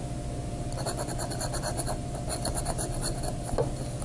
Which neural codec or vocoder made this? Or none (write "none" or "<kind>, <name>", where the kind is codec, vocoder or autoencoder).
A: none